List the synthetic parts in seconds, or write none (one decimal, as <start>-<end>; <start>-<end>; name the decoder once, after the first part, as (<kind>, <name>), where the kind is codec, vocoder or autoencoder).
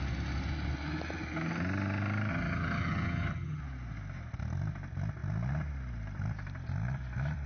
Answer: 2.3-3.6 (vocoder, HiFi-GAN)